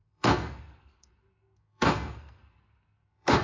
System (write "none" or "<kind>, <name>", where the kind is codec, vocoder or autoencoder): codec, SNAC